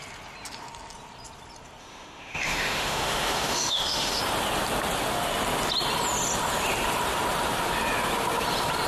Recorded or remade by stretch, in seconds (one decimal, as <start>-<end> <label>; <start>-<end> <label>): 0.0-1.8 recorded; 1.8-4.2 remade; 4.2-8.9 recorded